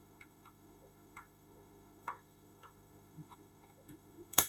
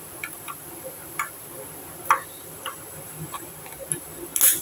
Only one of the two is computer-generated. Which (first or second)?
first